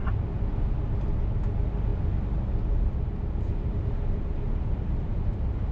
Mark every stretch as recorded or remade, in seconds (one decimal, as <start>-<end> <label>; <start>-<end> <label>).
0.0-5.7 recorded